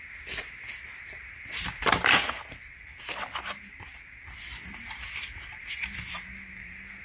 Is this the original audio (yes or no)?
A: yes